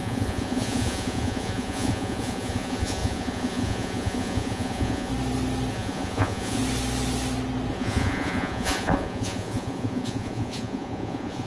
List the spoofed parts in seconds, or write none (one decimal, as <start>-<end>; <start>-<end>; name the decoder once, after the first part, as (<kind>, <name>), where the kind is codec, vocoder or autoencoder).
0.0-5.1 (vocoder, Vocos); 5.7-6.6; 7.7-11.5